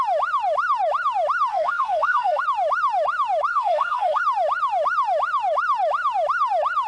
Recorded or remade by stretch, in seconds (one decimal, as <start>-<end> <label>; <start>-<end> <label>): 0.0-1.5 recorded; 1.5-2.4 remade; 2.4-3.5 recorded; 3.5-4.2 remade; 4.2-6.9 recorded